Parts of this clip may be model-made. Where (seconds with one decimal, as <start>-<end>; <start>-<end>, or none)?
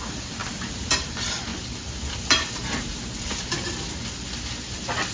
0.4-0.9